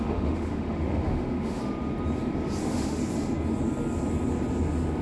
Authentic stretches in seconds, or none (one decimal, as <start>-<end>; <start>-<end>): 1.6-2.6; 3.0-5.0